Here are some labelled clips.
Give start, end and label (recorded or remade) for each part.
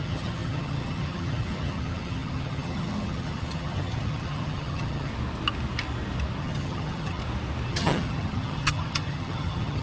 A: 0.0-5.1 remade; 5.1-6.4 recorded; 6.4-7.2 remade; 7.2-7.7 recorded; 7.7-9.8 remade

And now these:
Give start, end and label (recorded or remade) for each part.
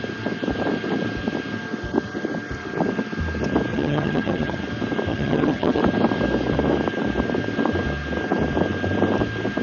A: 0.0-3.7 recorded; 3.7-4.6 remade; 4.6-5.1 recorded; 5.1-5.8 remade; 5.8-9.6 recorded